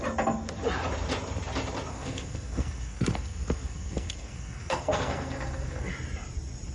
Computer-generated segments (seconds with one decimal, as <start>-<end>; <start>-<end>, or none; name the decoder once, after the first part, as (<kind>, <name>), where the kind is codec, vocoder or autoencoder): 1.9-5.9 (codec, SNAC)